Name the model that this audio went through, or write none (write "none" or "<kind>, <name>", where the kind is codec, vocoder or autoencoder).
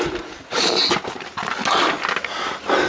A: none